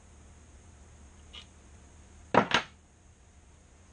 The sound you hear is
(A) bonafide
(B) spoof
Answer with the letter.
A